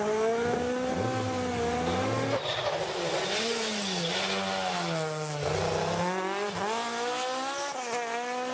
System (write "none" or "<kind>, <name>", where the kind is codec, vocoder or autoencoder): none